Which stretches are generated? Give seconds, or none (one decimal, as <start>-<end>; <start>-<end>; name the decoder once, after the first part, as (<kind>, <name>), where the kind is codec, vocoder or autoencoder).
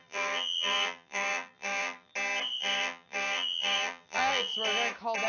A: 0.0-2.1 (vocoder, BigVGAN v2); 2.6-4.5